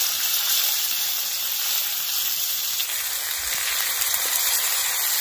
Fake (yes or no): no